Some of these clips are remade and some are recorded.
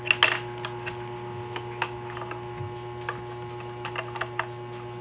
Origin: recorded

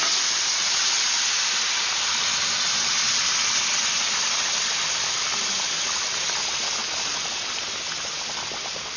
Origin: recorded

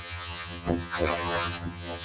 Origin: remade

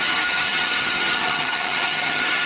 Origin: remade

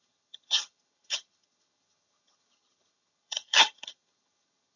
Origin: remade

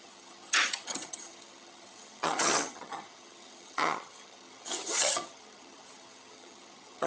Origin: remade